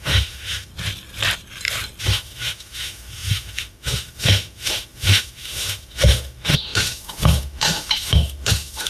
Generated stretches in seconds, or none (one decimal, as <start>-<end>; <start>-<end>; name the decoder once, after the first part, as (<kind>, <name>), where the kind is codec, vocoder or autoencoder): 0.0-0.7 (autoencoder, DAC-VAE); 2.0-8.9